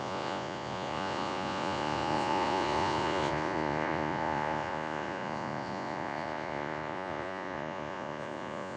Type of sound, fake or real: fake